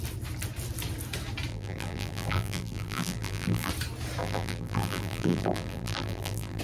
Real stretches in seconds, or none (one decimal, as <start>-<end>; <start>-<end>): 0.0-1.5; 3.7-4.2